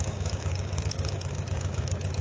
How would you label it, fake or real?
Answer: fake